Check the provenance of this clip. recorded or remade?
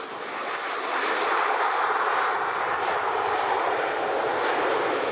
recorded